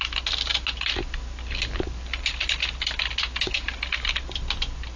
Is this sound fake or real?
real